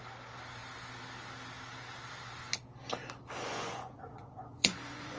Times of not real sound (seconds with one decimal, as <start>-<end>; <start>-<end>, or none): 3.4-5.2